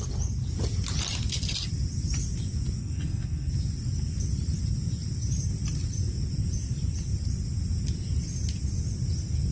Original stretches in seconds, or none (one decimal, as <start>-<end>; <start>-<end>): 0.0-2.8; 3.5-9.5